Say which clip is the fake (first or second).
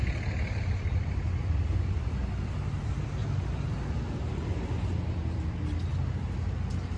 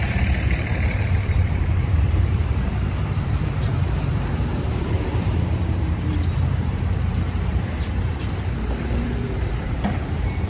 second